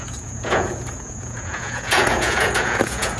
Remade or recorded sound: remade